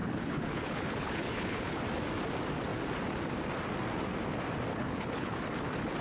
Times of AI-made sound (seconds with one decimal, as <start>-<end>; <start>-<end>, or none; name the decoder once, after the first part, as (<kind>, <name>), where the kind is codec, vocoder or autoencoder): 0.0-1.8 (codec, HILCodec); 4.7-5.4